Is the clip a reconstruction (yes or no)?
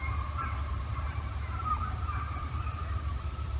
yes